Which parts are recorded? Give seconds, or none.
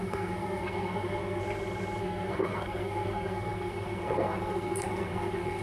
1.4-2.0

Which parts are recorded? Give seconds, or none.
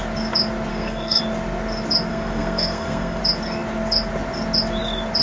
0.0-0.7; 1.2-2.1; 3.2-5.2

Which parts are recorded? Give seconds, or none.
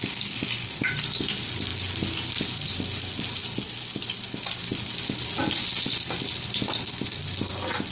0.0-7.9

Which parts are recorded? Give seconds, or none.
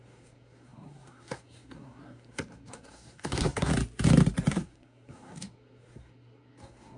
3.7-4.5